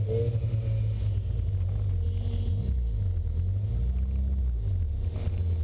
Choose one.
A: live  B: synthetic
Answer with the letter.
A